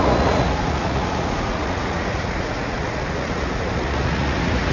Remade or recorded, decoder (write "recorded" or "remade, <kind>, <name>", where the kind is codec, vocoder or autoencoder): remade, vocoder, Vocos